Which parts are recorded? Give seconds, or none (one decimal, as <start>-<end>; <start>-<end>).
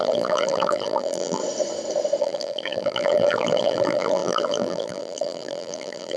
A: 1.4-2.2